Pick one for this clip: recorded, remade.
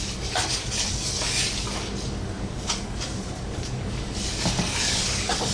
remade